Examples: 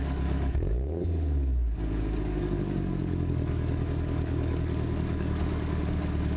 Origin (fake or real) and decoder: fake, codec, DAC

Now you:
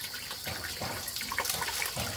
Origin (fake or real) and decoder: real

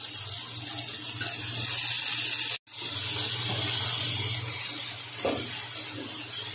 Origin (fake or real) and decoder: real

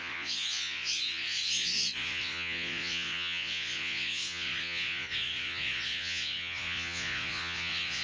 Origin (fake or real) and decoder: fake, vocoder, Vocos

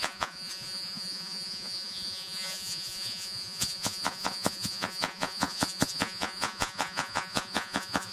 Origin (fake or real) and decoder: fake, vocoder, Vocos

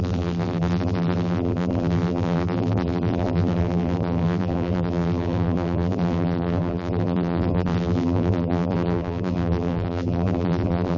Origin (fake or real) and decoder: fake, vocoder, BigVGAN v2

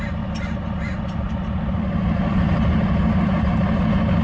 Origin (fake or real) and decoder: real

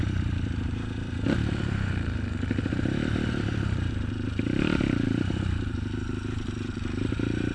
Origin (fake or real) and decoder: fake, vocoder, BigVGAN v2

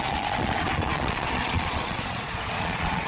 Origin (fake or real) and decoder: fake, vocoder, Vocos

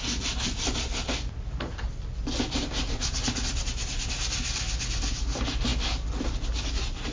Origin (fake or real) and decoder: real